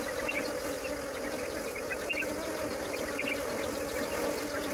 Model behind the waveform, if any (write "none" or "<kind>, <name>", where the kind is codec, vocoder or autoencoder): none